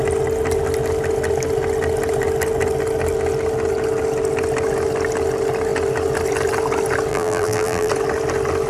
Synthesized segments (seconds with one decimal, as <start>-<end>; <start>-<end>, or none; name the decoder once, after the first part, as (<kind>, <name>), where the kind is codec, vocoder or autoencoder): 7.1-7.9 (vocoder, BigVGAN v2)